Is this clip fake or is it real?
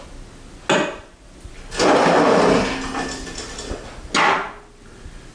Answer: real